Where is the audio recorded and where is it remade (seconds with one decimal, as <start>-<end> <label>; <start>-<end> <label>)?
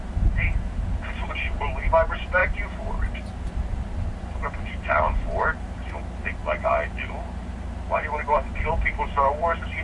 0.0-2.4 recorded; 2.4-5.9 remade; 5.9-6.4 recorded; 6.4-7.1 remade; 7.1-8.0 recorded; 8.0-8.7 remade; 8.7-9.8 recorded